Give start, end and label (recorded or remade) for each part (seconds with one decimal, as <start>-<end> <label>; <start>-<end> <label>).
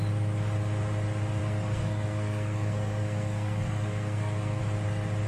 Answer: 0.0-1.4 recorded; 1.4-4.6 remade; 4.6-5.3 recorded